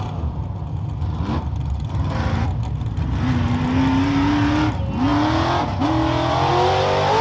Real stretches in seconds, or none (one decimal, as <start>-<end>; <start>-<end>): 0.0-7.2